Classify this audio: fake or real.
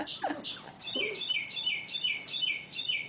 real